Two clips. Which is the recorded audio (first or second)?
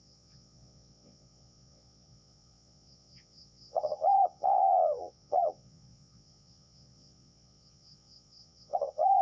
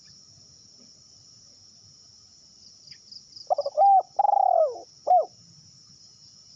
second